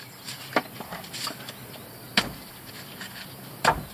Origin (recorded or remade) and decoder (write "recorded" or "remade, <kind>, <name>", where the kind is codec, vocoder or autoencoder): recorded